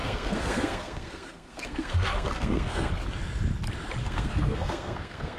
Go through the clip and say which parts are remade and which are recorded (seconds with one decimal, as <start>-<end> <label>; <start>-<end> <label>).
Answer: 0.0-2.9 remade; 2.9-4.0 recorded; 4.0-5.4 remade